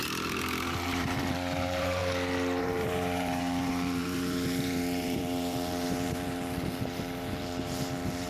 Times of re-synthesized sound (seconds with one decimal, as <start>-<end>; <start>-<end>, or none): 0.0-2.0; 2.6-8.3